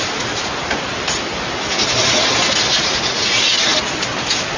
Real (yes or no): yes